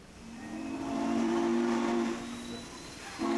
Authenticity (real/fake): fake